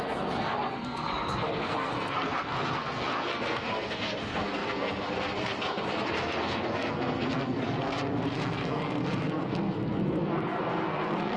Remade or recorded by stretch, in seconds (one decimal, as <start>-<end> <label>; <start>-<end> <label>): 0.0-11.4 remade